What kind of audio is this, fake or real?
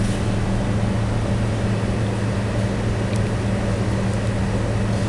real